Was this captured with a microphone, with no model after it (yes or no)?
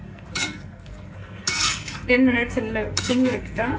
no